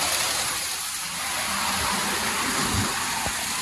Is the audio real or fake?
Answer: real